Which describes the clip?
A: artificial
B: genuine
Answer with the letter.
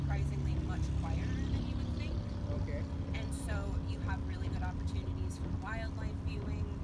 B